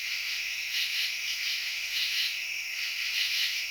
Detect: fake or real fake